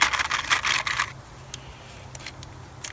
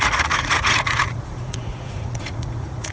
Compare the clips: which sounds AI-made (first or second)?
second